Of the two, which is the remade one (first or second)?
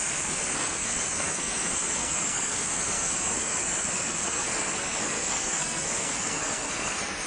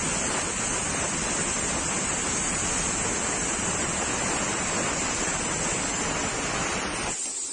first